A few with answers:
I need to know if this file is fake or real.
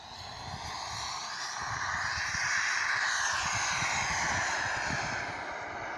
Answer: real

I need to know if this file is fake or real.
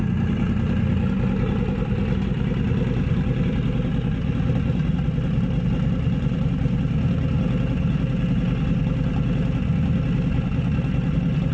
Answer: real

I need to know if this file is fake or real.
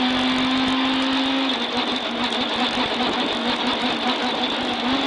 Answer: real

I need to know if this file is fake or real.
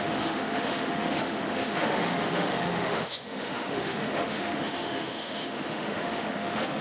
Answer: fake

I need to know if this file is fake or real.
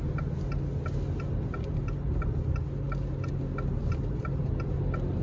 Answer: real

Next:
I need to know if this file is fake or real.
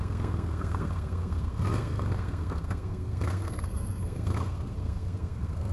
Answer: fake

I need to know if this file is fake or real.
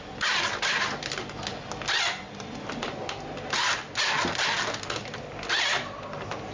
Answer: real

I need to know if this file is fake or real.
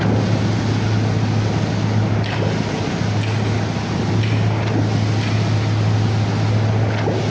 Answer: real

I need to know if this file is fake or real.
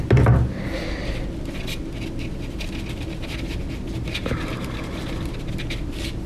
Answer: real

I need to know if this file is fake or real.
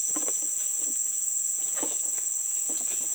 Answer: fake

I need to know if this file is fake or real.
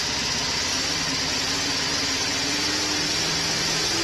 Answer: real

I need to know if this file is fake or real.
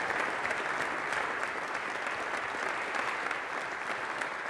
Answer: fake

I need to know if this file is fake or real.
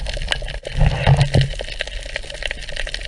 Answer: real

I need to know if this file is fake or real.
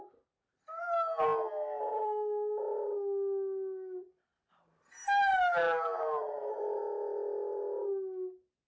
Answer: real